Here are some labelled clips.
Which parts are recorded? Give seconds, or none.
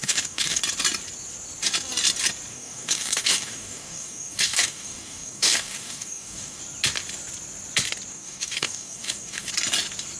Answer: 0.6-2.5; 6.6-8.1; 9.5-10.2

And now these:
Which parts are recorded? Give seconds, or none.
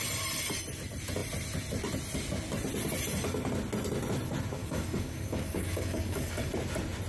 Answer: 0.0-4.6; 6.5-7.1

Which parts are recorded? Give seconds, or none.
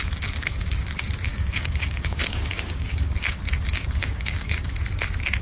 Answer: 0.0-1.3; 3.4-4.0; 4.7-5.4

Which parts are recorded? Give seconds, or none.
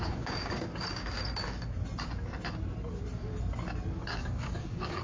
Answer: 1.0-4.0